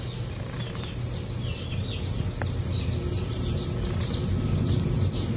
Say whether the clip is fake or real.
fake